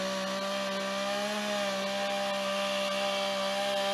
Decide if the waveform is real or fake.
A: real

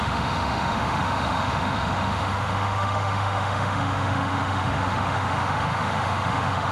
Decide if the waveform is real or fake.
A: fake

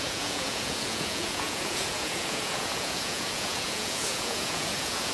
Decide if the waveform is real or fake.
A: fake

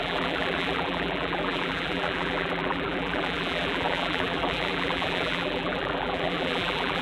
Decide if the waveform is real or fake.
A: fake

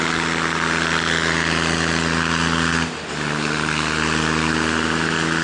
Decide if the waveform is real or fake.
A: real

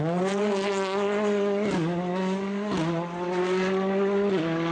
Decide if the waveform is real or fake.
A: real